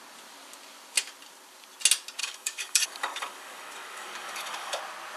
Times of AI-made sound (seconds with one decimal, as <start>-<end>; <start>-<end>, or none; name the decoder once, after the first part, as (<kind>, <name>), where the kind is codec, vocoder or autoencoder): 2.2-4.8 (codec, DAC)